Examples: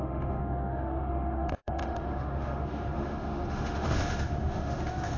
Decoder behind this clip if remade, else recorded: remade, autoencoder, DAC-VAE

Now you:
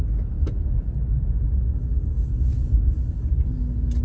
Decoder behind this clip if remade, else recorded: recorded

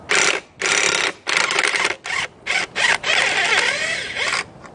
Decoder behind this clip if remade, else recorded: recorded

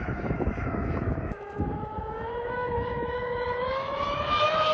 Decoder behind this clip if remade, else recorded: remade, autoencoder, DAC-VAE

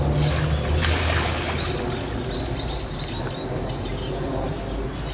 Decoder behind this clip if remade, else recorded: recorded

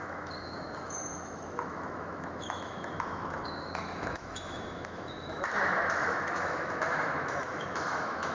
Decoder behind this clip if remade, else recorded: remade, autoencoder, DAC-VAE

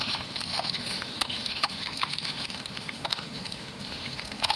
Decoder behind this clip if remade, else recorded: remade, autoencoder, DAC-VAE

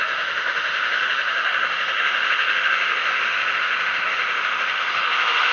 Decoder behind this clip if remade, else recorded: remade, autoencoder, DAC-VAE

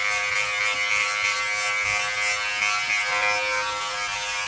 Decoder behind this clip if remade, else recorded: recorded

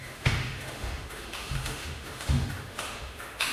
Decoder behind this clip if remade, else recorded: remade, autoencoder, DAC-VAE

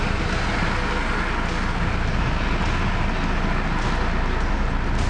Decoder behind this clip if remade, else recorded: recorded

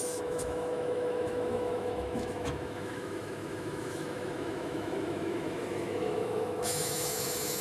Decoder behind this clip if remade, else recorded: remade, autoencoder, DAC-VAE